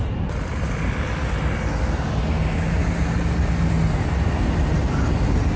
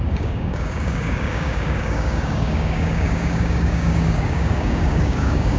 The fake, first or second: second